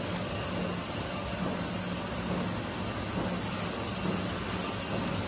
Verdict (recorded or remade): recorded